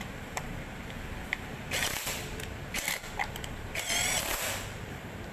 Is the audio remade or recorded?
remade